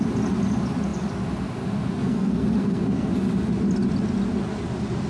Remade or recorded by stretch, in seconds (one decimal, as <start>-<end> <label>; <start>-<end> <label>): 0.0-2.0 recorded; 2.0-3.1 remade; 3.1-5.1 recorded